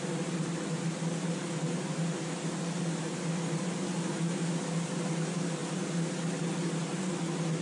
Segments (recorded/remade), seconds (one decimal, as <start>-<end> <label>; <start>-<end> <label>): 0.0-7.6 recorded

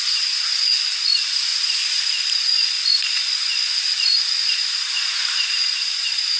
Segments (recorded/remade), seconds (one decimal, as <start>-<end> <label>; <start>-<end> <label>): 0.0-6.4 recorded

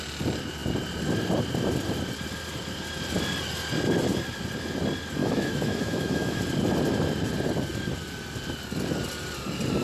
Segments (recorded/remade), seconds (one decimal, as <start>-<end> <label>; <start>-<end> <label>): 0.0-5.2 recorded; 5.2-6.4 remade; 6.4-9.8 recorded

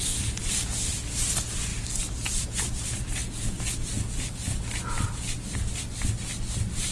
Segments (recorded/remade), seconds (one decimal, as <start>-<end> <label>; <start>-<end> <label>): 0.0-6.9 recorded

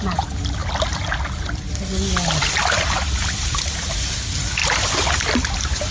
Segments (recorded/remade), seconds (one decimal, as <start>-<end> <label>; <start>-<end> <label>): 0.0-5.9 recorded

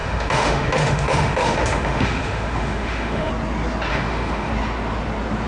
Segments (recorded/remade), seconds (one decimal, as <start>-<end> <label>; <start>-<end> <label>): 0.0-3.3 remade; 3.3-3.9 recorded; 3.9-4.5 remade; 4.5-5.5 recorded

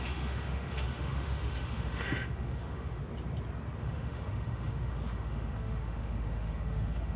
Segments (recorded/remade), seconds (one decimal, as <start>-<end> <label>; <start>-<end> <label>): 0.0-3.0 remade; 3.0-3.8 recorded; 3.8-7.2 remade

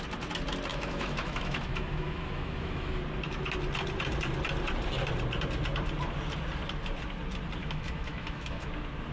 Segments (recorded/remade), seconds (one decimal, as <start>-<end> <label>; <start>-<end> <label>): 0.0-0.7 recorded; 0.7-3.0 remade; 3.0-7.6 recorded; 7.6-8.7 remade; 8.7-9.1 recorded